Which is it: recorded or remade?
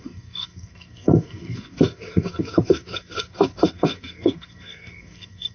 remade